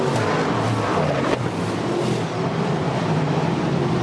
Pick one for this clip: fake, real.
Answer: real